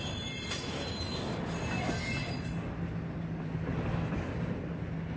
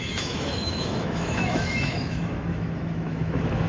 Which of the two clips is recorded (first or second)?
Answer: first